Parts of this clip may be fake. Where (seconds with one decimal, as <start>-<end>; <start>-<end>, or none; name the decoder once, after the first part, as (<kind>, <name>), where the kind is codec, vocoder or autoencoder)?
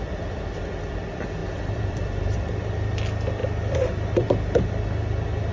1.4-2.4 (vocoder, BigVGAN v2); 3.4-4.0